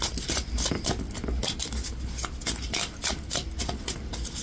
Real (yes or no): yes